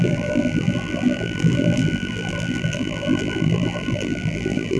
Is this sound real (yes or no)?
no